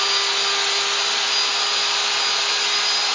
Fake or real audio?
real